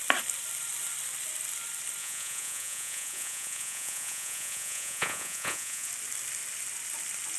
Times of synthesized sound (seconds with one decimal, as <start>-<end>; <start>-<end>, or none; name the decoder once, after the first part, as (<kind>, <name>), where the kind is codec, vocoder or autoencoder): 2.0-5.9 (vocoder, Vocos)